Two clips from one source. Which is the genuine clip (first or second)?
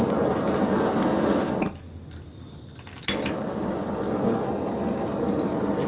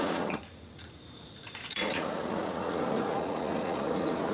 first